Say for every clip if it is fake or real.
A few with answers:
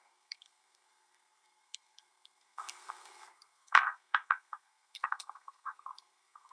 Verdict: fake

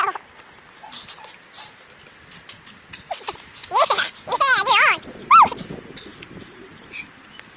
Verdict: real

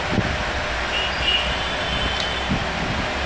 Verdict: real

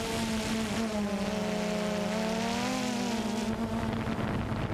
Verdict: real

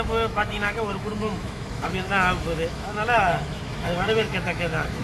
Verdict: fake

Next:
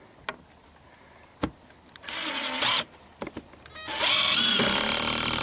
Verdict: real